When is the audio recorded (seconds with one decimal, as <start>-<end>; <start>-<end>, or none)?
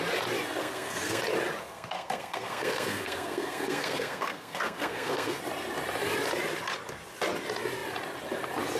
0.0-0.6; 1.2-1.6; 5.4-8.8